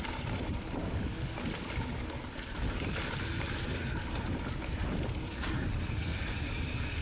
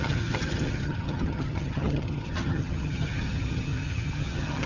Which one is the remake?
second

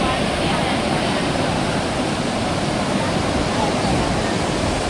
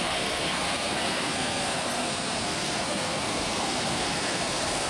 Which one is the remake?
second